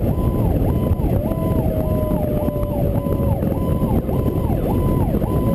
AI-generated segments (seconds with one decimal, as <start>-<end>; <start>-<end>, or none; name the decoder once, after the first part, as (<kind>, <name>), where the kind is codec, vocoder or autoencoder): 3.7-4.8 (vocoder, BigVGAN v2)